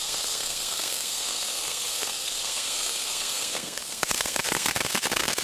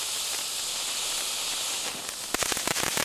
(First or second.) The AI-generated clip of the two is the first